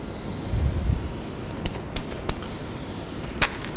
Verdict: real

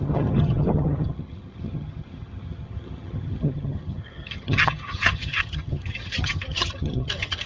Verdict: fake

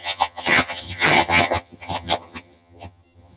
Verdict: fake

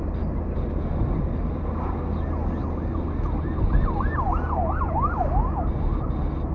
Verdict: real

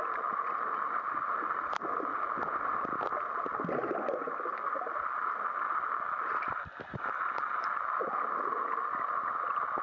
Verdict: real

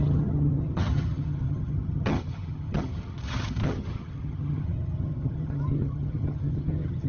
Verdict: fake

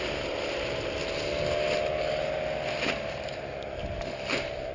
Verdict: real